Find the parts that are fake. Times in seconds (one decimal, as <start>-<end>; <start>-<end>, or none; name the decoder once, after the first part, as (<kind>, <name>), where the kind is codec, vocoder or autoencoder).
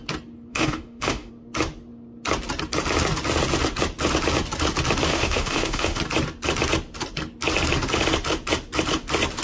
0.5-1.3 (autoencoder, DAC-VAE); 5.1-6.0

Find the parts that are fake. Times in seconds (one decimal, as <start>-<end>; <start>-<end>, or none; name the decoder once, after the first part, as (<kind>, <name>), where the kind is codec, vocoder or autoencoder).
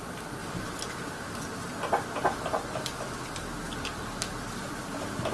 none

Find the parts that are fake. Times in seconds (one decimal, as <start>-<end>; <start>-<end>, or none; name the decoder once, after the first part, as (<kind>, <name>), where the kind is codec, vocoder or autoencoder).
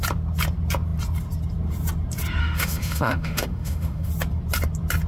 2.4-4.1 (autoencoder, DAC-VAE)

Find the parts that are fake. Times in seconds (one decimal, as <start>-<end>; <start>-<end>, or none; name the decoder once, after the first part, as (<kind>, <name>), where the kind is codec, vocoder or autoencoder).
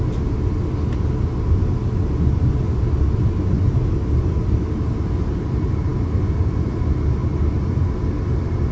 none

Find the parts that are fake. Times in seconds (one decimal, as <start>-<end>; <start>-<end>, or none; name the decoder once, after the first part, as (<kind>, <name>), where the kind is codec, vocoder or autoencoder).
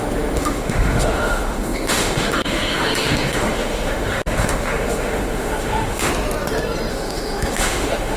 0.0-6.1 (autoencoder, DAC-VAE); 6.9-8.2